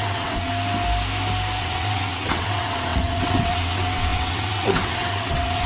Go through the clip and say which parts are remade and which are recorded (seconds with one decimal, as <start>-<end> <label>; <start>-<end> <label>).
0.0-0.5 remade; 0.5-1.6 recorded; 1.6-5.7 remade